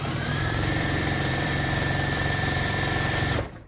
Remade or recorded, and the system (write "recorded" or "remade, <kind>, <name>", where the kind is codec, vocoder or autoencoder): remade, vocoder, BigVGAN v2